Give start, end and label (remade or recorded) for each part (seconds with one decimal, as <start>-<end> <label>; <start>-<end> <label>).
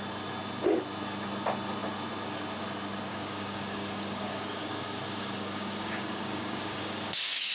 0.0-3.1 recorded; 3.1-7.5 remade